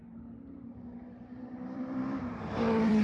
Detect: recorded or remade remade